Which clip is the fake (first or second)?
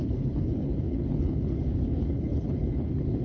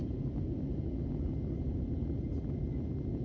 first